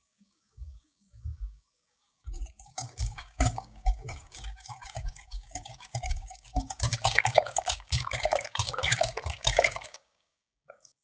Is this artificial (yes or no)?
yes